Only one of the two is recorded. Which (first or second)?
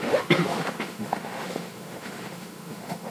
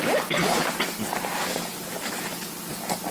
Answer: second